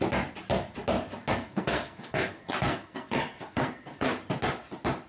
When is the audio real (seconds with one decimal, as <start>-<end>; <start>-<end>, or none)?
0.0-1.3; 4.1-5.1